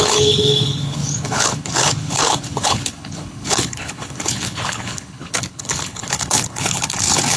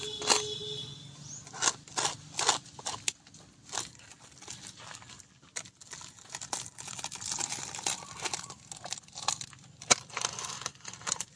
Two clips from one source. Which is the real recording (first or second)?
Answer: second